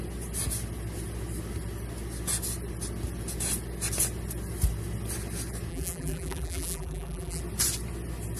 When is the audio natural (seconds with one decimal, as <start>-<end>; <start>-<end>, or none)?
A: 0.0-5.7; 7.4-8.4

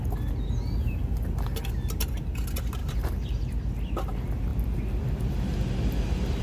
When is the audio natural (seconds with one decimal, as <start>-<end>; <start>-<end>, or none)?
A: 0.0-2.8; 3.4-6.4

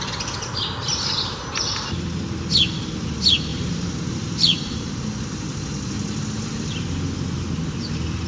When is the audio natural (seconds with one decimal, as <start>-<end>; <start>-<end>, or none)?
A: 0.0-3.5; 5.0-8.3

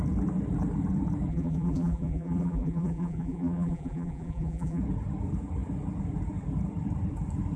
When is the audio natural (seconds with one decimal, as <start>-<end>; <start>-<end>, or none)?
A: 0.0-1.3; 4.8-7.6

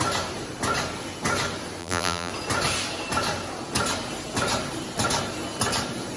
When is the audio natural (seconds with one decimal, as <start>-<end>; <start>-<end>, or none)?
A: 0.0-1.8; 2.3-6.2

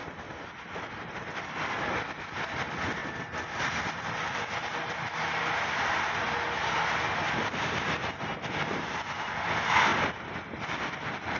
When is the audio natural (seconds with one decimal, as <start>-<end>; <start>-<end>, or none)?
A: 0.0-11.4